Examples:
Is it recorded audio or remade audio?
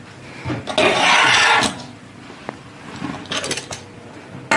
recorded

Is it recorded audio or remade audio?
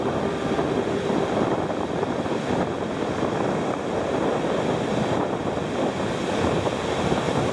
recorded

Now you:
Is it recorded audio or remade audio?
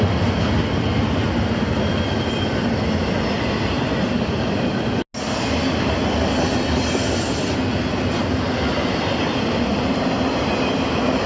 recorded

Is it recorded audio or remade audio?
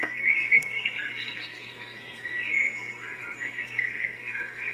remade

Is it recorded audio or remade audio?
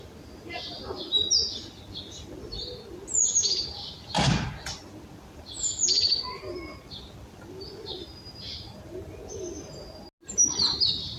recorded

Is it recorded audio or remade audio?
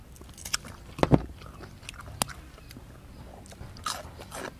recorded